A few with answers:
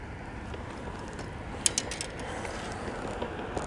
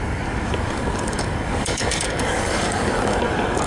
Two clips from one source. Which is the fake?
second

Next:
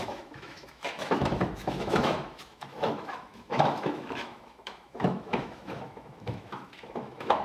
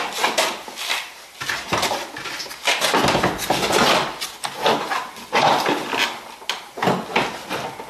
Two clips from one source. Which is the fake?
first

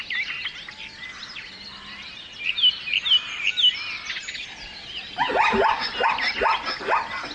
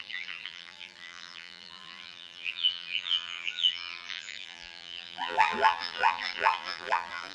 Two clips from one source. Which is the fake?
second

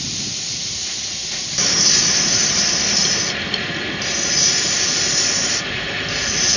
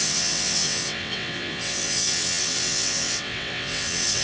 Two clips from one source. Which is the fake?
second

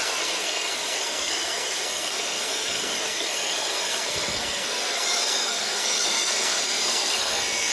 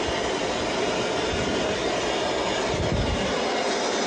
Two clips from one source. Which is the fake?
first